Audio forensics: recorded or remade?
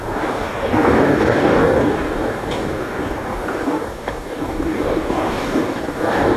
remade